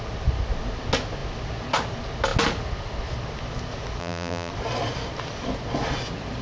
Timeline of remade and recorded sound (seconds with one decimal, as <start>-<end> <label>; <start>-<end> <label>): 0.0-4.0 recorded; 4.0-4.5 remade; 4.5-6.4 recorded

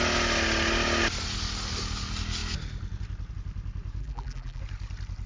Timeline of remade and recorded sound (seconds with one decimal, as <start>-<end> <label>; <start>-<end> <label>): 0.0-4.0 recorded; 4.0-4.6 remade; 4.6-5.3 recorded

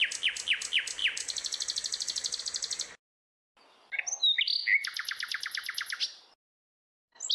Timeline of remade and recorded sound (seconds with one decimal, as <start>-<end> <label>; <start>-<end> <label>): 0.0-1.0 recorded; 1.0-2.4 remade; 2.4-7.3 recorded

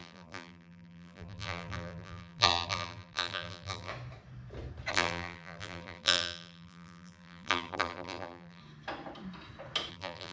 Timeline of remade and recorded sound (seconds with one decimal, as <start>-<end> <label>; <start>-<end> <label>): 0.0-3.9 remade; 3.9-4.9 recorded; 4.9-8.6 remade; 8.6-9.9 recorded; 9.9-10.3 remade

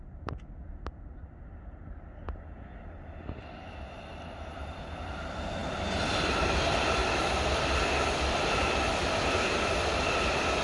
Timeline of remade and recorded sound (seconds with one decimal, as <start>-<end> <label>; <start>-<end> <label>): 0.0-0.6 remade; 0.6-3.9 recorded; 3.9-10.6 remade